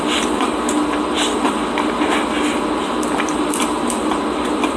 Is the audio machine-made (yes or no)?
no